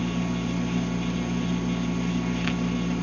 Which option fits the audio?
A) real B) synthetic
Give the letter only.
A